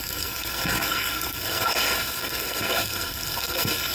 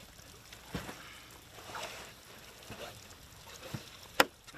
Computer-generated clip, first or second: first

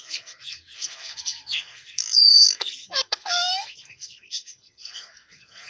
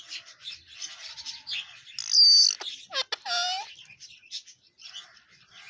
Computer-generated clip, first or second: first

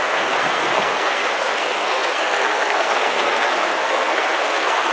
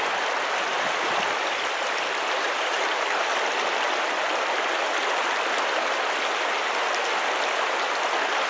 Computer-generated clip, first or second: first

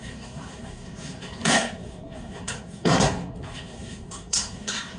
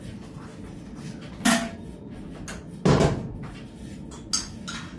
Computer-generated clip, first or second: first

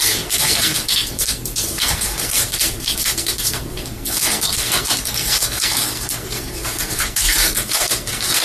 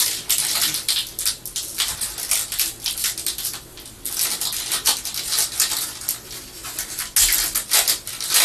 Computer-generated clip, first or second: first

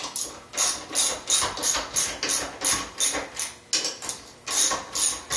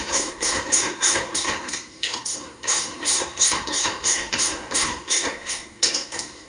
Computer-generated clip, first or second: second